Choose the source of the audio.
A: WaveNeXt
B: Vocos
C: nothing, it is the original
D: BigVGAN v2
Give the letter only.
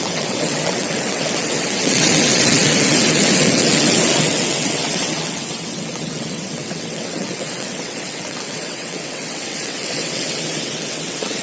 A